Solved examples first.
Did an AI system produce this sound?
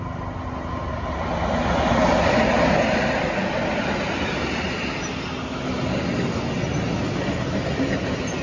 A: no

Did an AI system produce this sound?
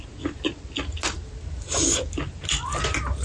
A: no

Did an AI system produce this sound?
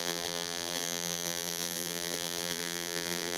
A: yes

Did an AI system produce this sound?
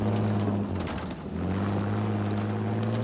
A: no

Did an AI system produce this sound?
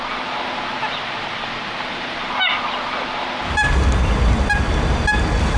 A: no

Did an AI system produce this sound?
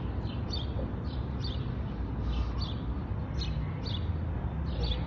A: no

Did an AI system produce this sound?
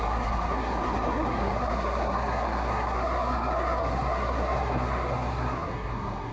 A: yes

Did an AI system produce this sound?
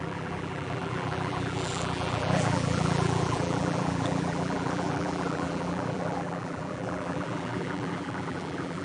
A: yes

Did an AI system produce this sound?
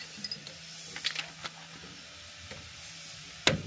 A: no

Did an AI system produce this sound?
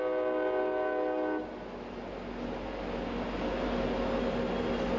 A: no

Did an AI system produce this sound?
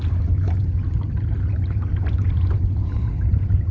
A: yes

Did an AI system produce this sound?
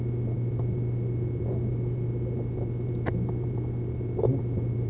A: no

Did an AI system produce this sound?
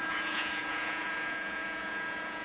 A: yes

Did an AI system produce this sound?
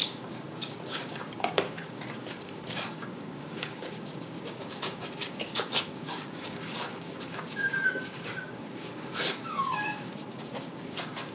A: yes